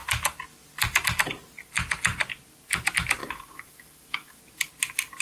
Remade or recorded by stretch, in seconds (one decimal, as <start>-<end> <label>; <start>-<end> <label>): 0.0-3.2 recorded; 3.2-4.4 remade; 4.4-5.2 recorded